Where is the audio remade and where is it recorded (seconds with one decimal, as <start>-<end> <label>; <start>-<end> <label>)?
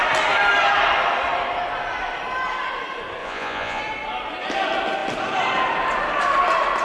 0.0-3.2 recorded; 3.2-3.8 remade; 3.8-6.8 recorded